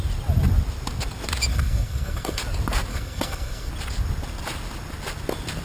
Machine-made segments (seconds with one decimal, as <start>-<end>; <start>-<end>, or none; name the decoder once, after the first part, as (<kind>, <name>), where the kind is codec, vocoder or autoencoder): 1.5-2.4 (codec, SNAC); 2.9-3.7

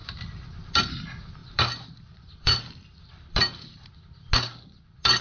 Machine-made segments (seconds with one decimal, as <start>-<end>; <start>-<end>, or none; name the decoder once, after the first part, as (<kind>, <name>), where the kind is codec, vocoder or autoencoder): 1.4-3.9 (vocoder, BigVGAN v2)

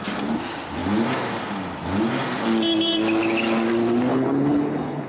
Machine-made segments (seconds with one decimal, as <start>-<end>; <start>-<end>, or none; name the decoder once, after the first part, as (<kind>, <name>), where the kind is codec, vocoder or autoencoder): 4.1-5.1 (codec, HILCodec)